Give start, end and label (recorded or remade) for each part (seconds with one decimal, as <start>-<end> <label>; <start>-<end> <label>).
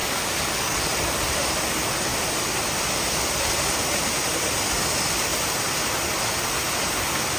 0.0-0.8 remade; 0.8-7.4 recorded